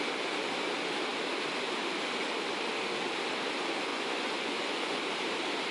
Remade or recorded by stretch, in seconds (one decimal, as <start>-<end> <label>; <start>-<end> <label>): 0.0-3.9 recorded; 3.9-5.0 remade; 5.0-5.7 recorded

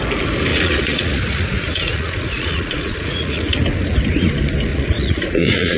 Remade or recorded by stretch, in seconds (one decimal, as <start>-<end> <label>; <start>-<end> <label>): 0.0-0.5 recorded; 0.5-3.4 remade; 3.4-4.7 recorded; 4.7-5.8 remade

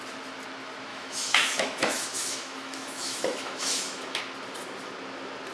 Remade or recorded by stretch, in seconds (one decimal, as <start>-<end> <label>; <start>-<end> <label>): 0.0-0.9 recorded; 0.9-4.2 remade; 4.2-5.5 recorded

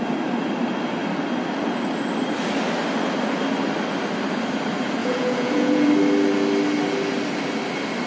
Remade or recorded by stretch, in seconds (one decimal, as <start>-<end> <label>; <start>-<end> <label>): 0.0-5.0 recorded; 5.0-5.9 remade; 5.9-8.1 recorded

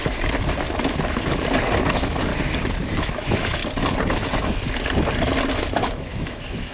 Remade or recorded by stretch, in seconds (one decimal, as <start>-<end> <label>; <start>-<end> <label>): 0.0-1.8 recorded; 1.8-2.3 remade; 2.3-3.0 recorded; 3.0-3.6 remade; 3.6-5.5 recorded; 5.5-6.7 remade

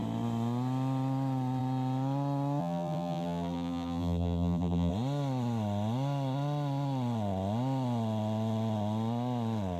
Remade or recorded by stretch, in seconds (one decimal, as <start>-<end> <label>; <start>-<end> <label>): 0.0-2.6 recorded; 2.6-4.9 remade; 4.9-9.8 recorded